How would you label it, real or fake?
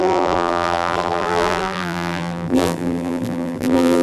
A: fake